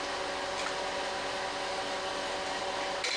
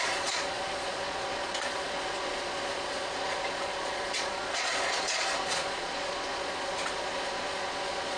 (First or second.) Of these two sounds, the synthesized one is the second